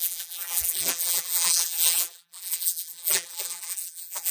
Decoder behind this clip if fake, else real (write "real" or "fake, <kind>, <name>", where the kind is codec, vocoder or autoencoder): fake, vocoder, BigVGAN v2